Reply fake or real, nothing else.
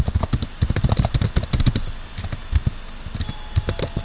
real